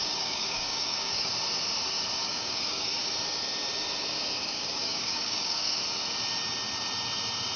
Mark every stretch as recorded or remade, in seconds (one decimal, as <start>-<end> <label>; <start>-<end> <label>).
0.0-1.3 remade; 1.3-2.2 recorded; 2.2-2.9 remade; 2.9-4.4 recorded; 4.4-5.8 remade; 5.8-7.6 recorded